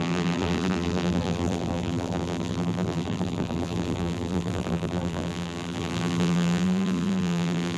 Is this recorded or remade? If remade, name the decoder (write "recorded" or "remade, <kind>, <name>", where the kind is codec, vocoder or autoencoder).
remade, vocoder, BigVGAN v2